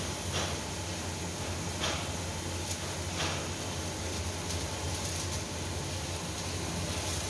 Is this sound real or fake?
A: real